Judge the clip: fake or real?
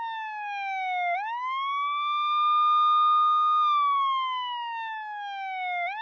real